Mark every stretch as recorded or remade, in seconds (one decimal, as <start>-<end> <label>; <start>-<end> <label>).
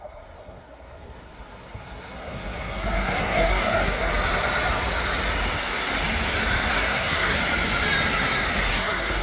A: 0.0-4.1 remade; 4.1-6.7 recorded; 6.7-7.4 remade; 7.4-8.7 recorded; 8.7-9.2 remade